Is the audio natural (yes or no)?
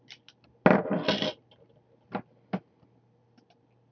yes